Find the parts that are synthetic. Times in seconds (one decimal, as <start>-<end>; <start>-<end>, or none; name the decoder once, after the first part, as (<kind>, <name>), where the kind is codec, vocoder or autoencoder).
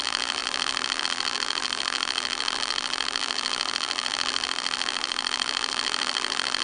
0.0-6.6 (vocoder, BigVGAN v2)